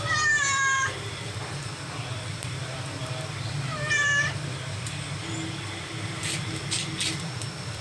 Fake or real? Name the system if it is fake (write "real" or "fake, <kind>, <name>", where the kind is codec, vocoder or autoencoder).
fake, vocoder, BigVGAN v2